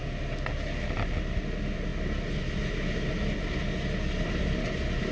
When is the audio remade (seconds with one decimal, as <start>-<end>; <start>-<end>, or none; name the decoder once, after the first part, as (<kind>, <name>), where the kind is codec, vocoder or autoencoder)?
none